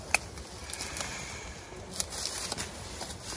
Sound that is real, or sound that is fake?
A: real